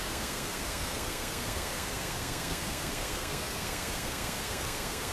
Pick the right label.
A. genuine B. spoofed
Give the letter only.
B